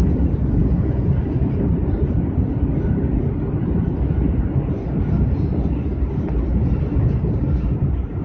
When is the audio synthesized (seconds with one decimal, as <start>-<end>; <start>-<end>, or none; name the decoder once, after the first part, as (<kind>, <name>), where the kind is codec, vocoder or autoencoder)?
0.6-1.1 (vocoder, Vocos)